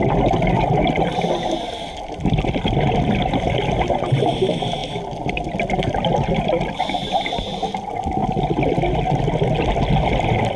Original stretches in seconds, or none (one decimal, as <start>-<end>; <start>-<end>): 0.0-10.6